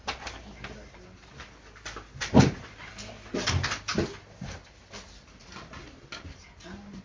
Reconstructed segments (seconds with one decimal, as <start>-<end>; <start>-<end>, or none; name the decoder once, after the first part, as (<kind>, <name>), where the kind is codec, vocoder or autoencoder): none